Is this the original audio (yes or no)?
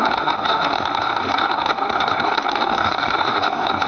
no